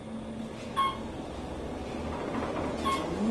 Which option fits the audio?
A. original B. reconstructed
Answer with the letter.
A